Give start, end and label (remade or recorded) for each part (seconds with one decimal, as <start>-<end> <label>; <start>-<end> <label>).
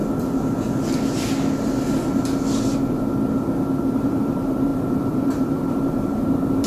0.0-4.0 recorded; 4.0-6.7 remade